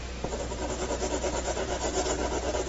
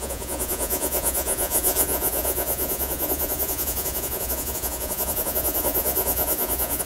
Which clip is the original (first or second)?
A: first